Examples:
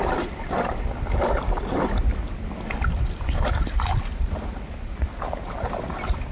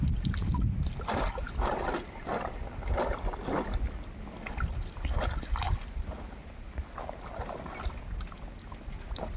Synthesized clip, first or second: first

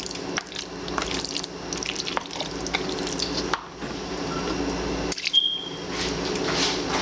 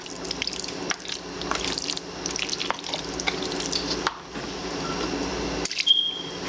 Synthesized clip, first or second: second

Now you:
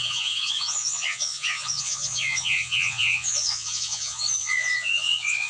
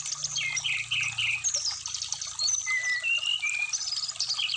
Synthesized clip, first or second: first